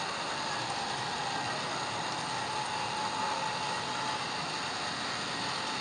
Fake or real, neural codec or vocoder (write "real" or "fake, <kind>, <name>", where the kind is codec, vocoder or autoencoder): real